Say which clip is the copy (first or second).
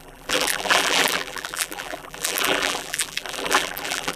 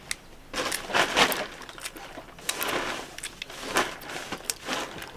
first